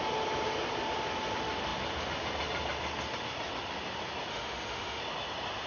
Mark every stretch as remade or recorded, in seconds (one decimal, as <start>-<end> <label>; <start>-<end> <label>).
0.0-4.3 recorded; 4.3-5.0 remade; 5.0-5.7 recorded